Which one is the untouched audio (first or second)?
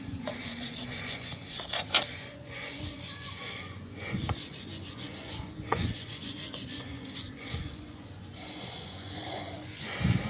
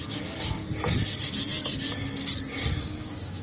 second